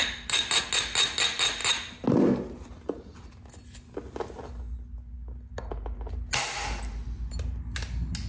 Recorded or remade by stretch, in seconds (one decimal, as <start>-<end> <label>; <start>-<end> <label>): 0.0-8.3 recorded